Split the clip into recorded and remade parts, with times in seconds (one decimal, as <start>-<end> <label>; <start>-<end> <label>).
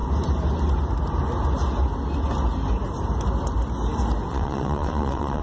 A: 0.0-4.3 recorded; 4.3-5.4 remade